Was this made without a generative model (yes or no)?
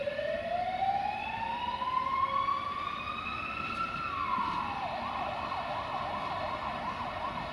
yes